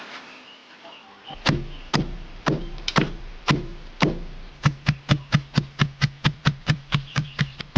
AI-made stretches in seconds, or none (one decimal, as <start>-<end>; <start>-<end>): 0.0-0.6; 1.9-3.7; 6.3-7.8